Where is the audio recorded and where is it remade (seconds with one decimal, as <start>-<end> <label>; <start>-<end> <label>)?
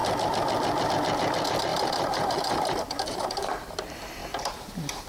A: 0.0-1.7 recorded; 1.7-2.8 remade; 2.8-4.2 recorded; 4.2-5.1 remade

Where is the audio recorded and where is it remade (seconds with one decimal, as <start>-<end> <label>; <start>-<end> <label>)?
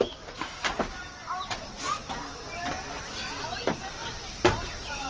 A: 0.0-1.0 recorded; 1.0-2.7 remade; 2.7-4.0 recorded; 4.0-5.1 remade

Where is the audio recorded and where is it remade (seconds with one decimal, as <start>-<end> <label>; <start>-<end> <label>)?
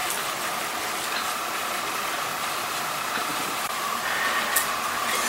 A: 0.0-2.3 recorded; 2.3-4.0 remade; 4.0-5.3 recorded